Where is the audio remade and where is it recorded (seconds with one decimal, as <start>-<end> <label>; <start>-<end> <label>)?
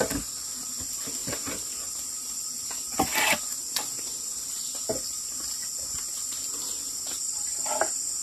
0.0-8.2 recorded